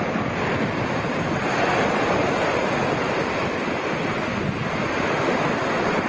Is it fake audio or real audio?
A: real